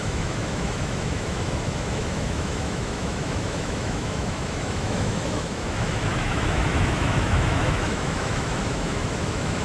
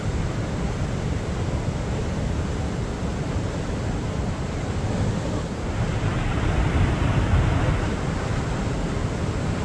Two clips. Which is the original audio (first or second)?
second